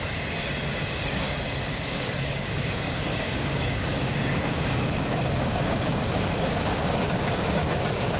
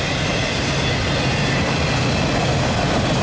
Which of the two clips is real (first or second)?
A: second